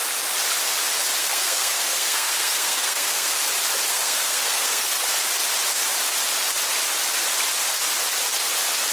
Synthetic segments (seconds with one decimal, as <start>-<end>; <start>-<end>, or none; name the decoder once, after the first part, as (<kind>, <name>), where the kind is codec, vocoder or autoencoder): 1.2-3.4 (codec, SNAC); 3.9-5.0